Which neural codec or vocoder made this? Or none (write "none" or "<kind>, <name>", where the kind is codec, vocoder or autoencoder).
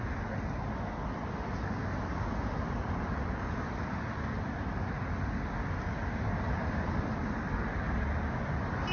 none